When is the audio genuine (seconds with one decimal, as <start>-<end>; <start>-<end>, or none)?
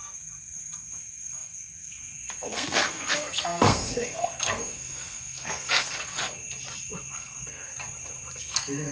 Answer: 6.4-7.1; 7.7-8.4